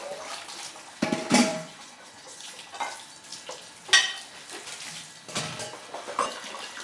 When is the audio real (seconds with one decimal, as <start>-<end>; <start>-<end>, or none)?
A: 0.0-1.5; 2.5-6.8